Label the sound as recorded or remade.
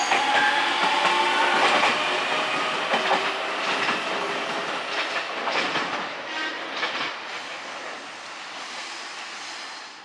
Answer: recorded